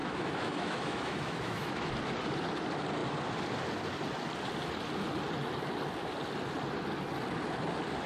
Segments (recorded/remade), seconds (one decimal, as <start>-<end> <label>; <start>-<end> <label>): 0.0-1.9 remade; 1.9-8.1 recorded